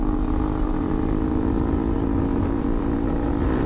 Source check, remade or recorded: recorded